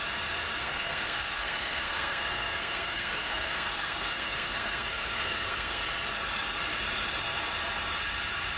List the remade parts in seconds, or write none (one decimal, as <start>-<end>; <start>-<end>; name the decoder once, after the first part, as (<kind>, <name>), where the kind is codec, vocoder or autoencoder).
0.6-5.8 (codec, SNAC)